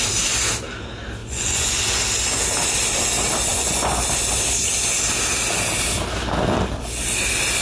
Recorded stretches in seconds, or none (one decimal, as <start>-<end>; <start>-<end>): 0.0-1.2; 1.8-3.5; 4.0-7.6